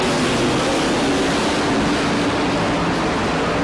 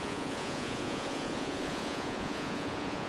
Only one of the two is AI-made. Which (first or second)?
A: second